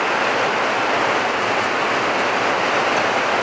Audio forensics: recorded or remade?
recorded